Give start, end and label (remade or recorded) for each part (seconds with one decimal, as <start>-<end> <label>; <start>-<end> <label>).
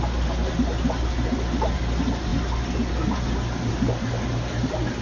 0.0-5.0 recorded